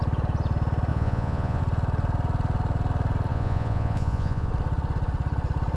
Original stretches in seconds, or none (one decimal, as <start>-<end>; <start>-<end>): 0.0-0.9; 1.6-3.3; 4.5-5.8